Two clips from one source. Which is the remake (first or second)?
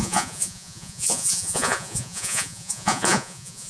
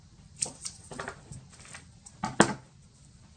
first